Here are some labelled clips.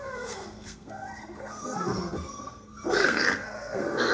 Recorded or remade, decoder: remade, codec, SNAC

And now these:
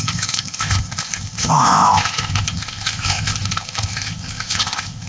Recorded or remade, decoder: remade, codec, ZipCodec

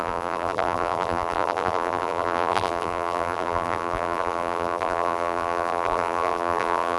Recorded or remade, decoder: remade, vocoder, BigVGAN v2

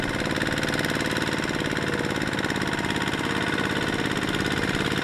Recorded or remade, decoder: recorded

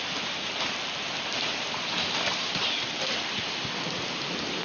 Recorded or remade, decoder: recorded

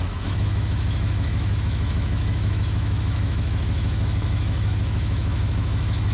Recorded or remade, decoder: remade, autoencoder, DAC-VAE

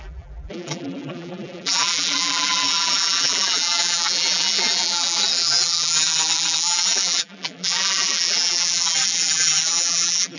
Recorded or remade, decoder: remade, vocoder, BigVGAN v2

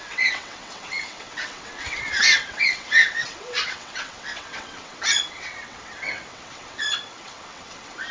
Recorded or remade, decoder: remade, vocoder, WaveNeXt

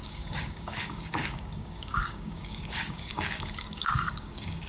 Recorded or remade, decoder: remade, codec, DAC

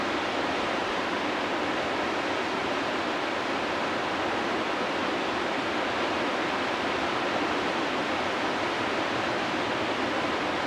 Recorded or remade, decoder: recorded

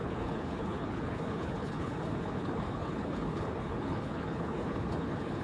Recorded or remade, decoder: remade, codec, HILCodec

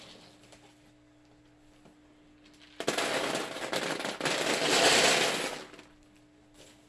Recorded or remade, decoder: recorded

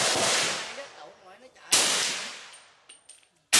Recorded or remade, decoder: recorded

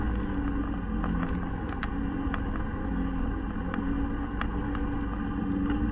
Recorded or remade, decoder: recorded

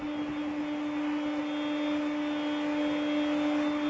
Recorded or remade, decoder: recorded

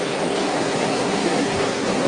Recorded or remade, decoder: remade, codec, SNAC